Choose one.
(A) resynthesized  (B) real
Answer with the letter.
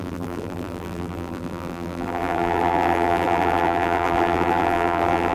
A